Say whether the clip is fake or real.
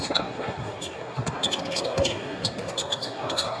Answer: fake